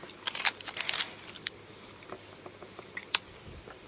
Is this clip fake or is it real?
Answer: fake